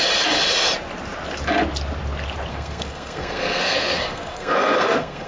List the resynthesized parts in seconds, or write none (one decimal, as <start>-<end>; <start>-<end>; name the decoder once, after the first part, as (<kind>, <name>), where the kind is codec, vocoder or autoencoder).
2.5-5.3 (codec, SNAC)